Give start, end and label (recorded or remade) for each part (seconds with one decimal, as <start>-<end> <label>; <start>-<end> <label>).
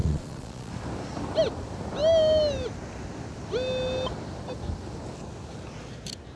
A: 0.0-0.7 remade; 0.7-6.4 recorded